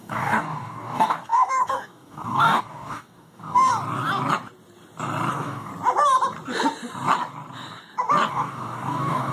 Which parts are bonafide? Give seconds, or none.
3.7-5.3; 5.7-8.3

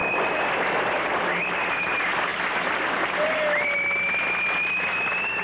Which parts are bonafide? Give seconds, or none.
0.0-2.3; 3.2-5.4

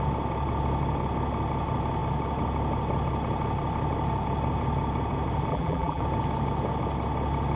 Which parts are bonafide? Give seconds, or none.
0.0-5.5; 6.0-7.6

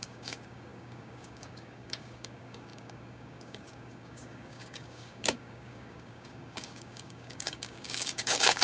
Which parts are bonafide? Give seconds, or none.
none

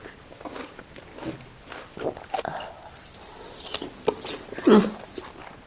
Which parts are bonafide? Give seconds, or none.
0.0-5.7

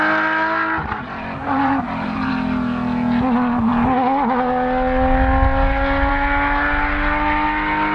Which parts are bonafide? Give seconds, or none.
0.0-1.4; 2.3-7.9

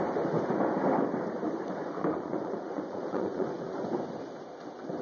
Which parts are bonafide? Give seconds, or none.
0.0-1.8; 3.9-5.0